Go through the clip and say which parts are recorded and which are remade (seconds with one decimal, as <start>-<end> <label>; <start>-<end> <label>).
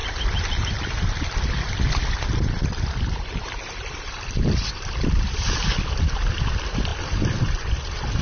0.0-1.0 recorded; 1.0-8.2 remade